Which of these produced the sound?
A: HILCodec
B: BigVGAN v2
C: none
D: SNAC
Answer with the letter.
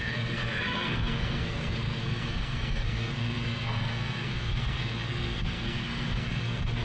D